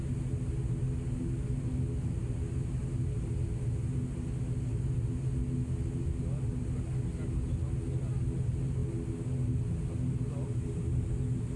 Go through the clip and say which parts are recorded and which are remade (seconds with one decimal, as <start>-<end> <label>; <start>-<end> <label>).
0.0-11.6 recorded